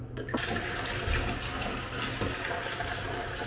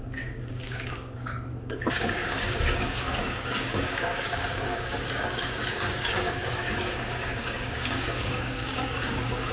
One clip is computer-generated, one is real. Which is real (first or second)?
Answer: first